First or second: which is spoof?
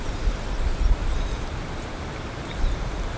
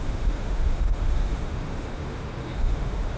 second